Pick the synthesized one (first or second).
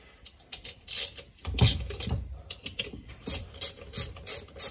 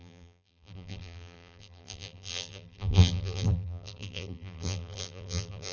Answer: second